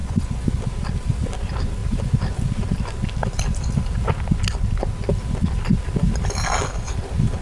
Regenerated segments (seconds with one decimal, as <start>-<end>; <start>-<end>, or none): 0.0-0.6